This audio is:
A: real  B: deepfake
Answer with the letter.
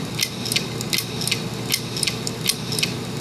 A